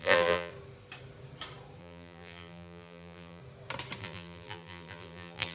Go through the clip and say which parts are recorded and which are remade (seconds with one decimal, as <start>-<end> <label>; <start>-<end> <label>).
0.0-0.5 remade; 0.5-1.8 recorded; 1.8-3.4 remade; 3.4-4.0 recorded; 4.0-5.5 remade